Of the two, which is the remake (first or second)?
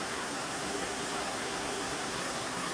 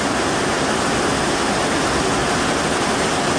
first